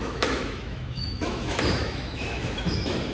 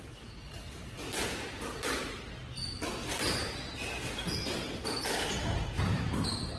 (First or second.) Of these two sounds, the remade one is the first